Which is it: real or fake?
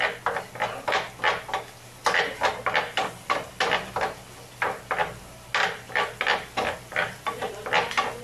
real